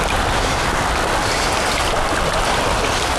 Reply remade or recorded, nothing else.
recorded